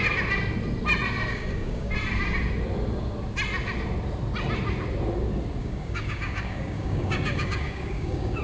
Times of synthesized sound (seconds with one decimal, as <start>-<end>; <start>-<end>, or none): 1.3-1.9; 5.6-8.4